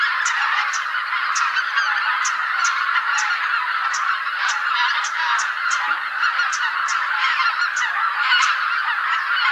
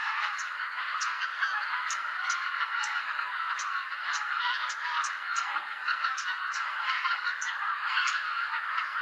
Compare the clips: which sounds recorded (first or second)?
first